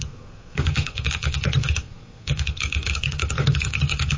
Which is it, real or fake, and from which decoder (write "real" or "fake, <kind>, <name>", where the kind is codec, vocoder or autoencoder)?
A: fake, codec, SNAC